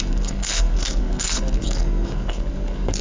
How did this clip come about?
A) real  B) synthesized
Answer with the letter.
B